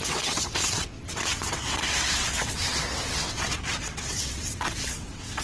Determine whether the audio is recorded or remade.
remade